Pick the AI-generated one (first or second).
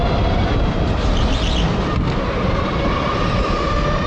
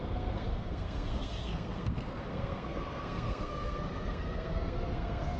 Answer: second